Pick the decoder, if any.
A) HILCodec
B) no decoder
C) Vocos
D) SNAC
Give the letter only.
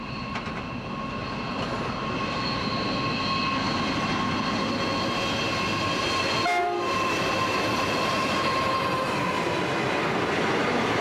B